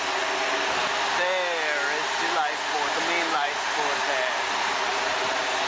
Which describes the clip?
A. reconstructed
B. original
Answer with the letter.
B